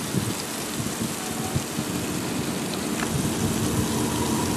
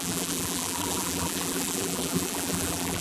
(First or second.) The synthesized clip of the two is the second